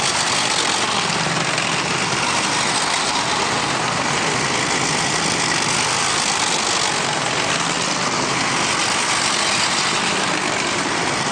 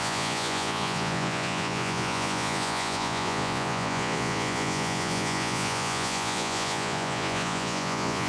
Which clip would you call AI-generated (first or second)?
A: second